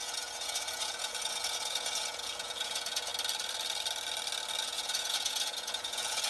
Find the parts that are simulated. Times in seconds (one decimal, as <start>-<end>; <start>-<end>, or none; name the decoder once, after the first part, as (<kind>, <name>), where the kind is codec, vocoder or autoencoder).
0.0-3.1 (vocoder, Vocos); 4.6-6.3